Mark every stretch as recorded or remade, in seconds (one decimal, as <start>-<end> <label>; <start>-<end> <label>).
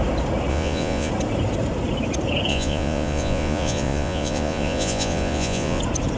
0.0-0.5 recorded; 0.5-1.1 remade; 1.1-2.5 recorded; 2.5-5.8 remade; 5.8-6.2 recorded